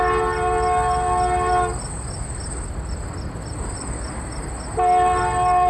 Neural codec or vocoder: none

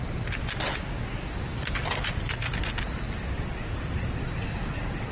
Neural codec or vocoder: none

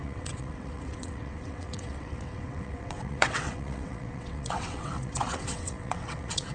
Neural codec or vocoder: vocoder, WaveNeXt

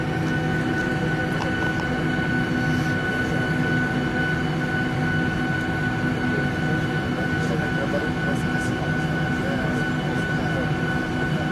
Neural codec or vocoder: none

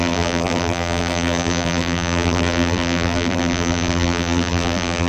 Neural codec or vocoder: vocoder, BigVGAN v2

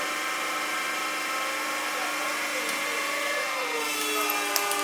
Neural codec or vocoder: none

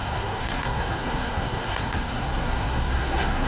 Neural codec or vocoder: codec, SNAC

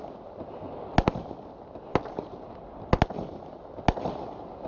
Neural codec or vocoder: none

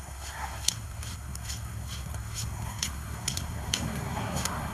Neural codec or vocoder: codec, SNAC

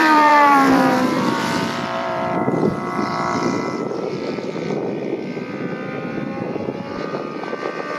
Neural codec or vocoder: vocoder, BigVGAN v2